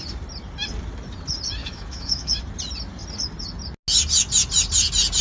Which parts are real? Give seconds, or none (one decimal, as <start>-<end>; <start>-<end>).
0.0-1.6; 2.4-5.2